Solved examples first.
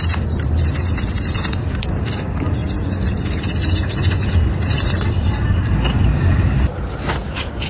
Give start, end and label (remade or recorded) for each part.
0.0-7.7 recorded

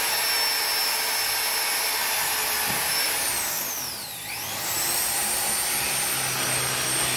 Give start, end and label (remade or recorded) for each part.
0.0-7.2 recorded

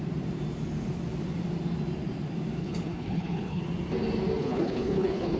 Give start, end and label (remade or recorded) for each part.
0.0-2.6 recorded; 2.6-3.6 remade; 3.6-4.4 recorded; 4.4-5.4 remade